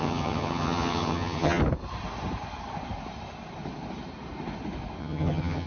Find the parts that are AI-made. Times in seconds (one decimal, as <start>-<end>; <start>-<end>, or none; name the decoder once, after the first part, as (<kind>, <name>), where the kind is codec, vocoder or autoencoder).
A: 0.0-1.6 (vocoder, HiFi-GAN); 5.0-5.7

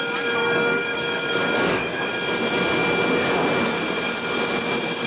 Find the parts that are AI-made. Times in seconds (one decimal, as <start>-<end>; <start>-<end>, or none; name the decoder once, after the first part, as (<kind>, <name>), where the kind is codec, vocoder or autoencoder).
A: 0.4-2.1 (codec, DAC)

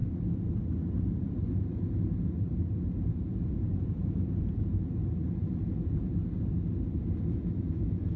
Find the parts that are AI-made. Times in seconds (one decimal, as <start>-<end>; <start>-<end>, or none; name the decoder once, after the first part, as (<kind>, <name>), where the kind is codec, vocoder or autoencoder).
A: 2.8-5.0 (vocoder, Vocos); 5.7-6.2; 7.2-8.2